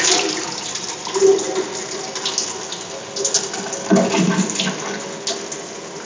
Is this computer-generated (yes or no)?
no